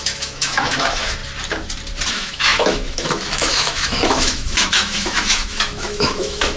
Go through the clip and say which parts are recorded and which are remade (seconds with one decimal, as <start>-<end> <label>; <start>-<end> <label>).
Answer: 0.0-1.2 remade; 1.2-2.1 recorded; 2.1-6.6 remade